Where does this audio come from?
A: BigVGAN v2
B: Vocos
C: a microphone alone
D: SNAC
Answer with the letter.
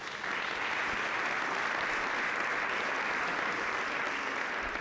C